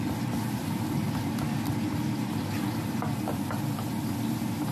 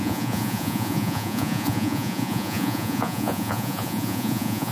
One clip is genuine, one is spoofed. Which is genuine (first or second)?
first